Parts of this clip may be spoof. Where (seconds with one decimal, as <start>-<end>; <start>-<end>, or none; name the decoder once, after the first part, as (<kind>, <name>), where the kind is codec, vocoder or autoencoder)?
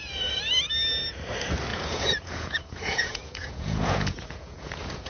1.7-5.1 (vocoder, Vocos)